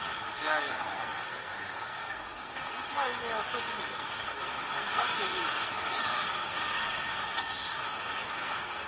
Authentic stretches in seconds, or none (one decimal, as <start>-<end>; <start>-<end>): none